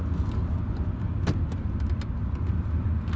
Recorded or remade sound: recorded